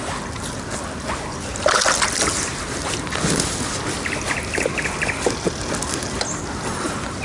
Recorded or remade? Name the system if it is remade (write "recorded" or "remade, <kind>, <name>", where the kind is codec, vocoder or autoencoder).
recorded